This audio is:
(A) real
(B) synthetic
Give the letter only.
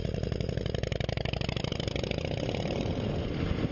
B